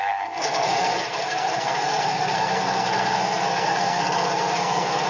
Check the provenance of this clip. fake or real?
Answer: fake